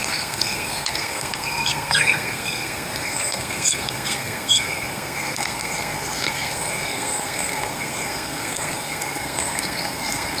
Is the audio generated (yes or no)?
yes